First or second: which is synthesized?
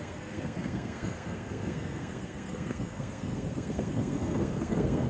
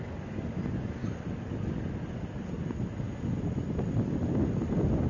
first